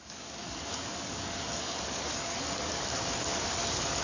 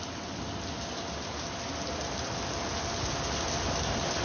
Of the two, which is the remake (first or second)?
first